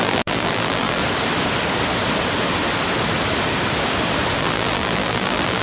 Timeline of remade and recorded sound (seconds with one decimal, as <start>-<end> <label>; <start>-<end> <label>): 0.0-1.0 remade; 1.0-4.4 recorded; 4.4-5.6 remade